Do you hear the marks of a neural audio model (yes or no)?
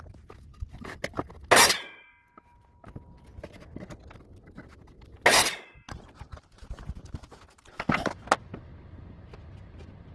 no